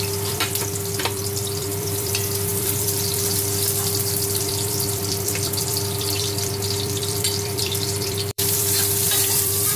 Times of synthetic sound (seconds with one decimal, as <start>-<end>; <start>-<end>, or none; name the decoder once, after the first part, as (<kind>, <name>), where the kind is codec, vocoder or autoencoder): 0.0-9.8 (vocoder, BigVGAN v2)

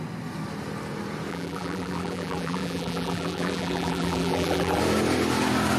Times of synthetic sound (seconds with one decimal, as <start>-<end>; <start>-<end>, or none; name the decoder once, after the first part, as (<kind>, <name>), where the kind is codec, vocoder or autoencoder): 1.3-4.8 (vocoder, BigVGAN v2)

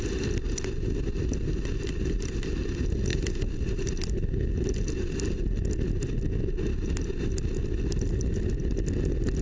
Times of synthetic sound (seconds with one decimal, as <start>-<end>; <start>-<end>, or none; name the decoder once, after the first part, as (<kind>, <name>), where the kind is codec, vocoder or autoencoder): none

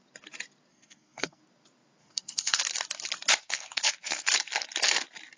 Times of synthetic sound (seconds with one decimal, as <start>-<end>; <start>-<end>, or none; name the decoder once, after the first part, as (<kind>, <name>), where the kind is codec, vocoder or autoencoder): 0.7-1.4 (codec, SNAC); 2.0-2.6; 3.4-4.3

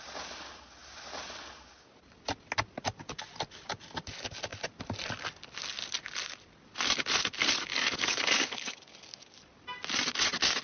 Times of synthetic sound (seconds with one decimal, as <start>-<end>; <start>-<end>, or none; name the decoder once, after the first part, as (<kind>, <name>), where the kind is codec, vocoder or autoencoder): 7.7-9.4 (codec, DAC)

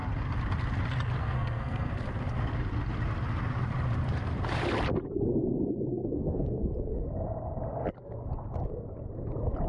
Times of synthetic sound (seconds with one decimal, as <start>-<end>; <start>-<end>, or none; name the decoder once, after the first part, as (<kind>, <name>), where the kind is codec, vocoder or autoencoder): 1.2-1.9 (codec, SNAC); 5.9-6.7